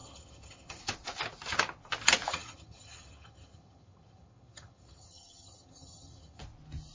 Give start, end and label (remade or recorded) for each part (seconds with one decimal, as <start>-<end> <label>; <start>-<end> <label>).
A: 0.0-0.8 remade; 0.8-2.3 recorded; 2.3-6.4 remade; 6.4-6.9 recorded